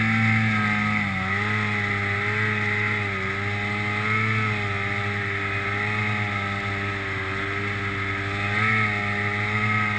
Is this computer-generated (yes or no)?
no